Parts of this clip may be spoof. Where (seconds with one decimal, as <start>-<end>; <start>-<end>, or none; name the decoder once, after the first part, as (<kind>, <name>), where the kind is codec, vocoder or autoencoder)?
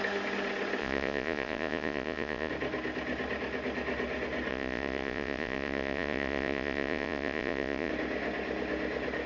0.8-2.5 (vocoder, Vocos); 4.5-7.9